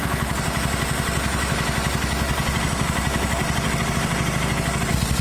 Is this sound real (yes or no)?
yes